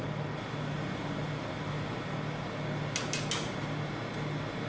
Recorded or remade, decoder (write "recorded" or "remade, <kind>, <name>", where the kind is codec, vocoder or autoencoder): recorded